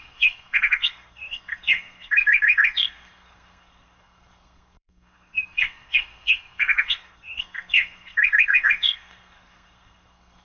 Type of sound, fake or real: fake